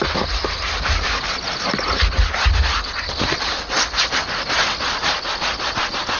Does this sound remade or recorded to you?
recorded